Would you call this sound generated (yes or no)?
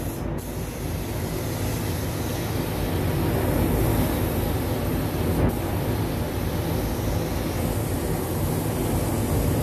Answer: no